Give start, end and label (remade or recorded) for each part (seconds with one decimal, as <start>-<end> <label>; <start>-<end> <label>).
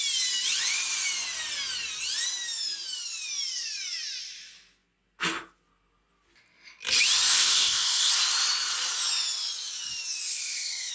0.0-7.3 recorded; 7.3-8.1 remade; 8.1-10.3 recorded; 10.3-10.9 remade